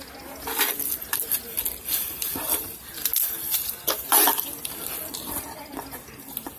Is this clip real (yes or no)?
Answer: yes